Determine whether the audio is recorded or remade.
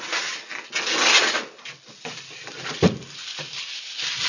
recorded